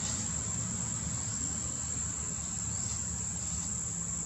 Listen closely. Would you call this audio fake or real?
real